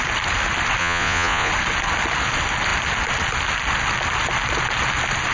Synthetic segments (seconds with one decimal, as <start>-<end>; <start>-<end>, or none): 0.8-1.5